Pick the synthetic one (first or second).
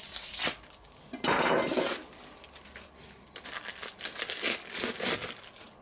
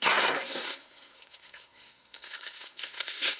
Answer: second